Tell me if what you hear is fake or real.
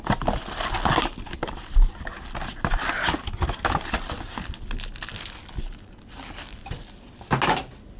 real